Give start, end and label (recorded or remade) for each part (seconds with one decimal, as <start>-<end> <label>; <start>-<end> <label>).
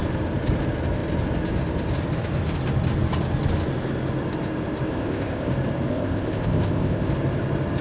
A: 0.0-4.9 recorded; 4.9-5.5 remade; 5.5-5.9 recorded; 5.9-7.1 remade; 7.1-7.8 recorded